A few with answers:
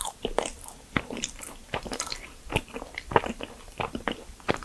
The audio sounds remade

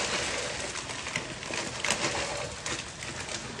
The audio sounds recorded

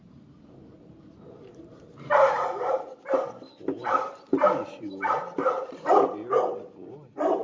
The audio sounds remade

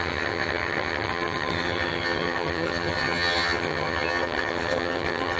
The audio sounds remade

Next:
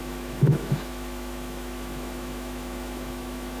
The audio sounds remade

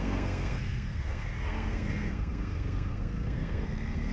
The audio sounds remade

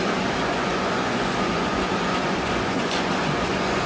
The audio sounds remade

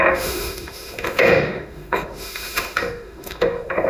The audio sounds remade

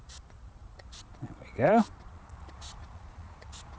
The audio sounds remade